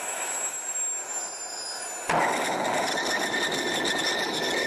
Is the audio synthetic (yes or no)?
no